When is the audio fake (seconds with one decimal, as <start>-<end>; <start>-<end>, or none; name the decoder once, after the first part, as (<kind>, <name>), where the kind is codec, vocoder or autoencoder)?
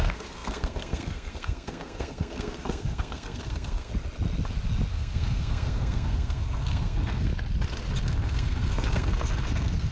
0.0-3.9 (codec, SNAC); 4.9-7.3; 8.0-9.9